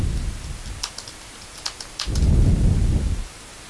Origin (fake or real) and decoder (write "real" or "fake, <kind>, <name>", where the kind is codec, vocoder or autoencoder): real